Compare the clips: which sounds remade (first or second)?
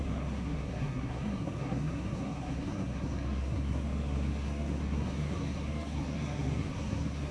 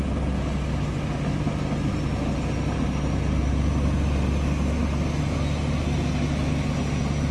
first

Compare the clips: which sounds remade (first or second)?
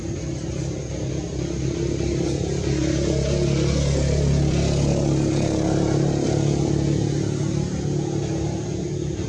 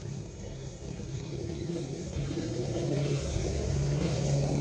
second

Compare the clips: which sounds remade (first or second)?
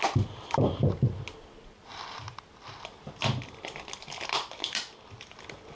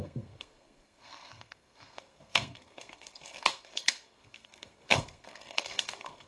second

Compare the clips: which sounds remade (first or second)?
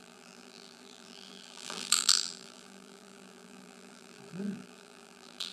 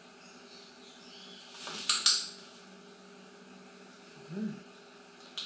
first